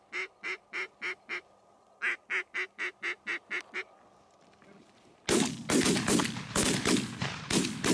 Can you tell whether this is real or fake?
real